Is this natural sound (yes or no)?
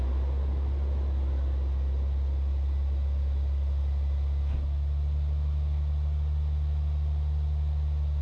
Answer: yes